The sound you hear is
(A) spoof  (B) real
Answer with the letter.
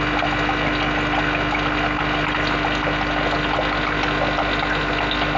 B